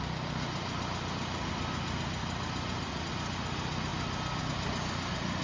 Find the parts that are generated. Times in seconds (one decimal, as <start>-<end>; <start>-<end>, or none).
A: none